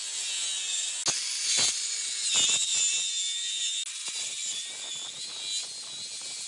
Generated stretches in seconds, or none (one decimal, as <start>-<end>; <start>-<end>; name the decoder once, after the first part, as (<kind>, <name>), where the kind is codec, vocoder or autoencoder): none